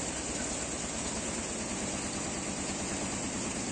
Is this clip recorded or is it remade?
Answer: recorded